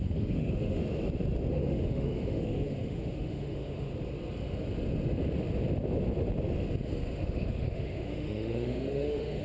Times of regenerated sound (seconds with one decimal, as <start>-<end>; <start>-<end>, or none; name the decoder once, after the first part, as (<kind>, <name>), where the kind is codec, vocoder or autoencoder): 0.0-0.8 (autoencoder, DAC-VAE); 1.5-3.9; 7.2-9.4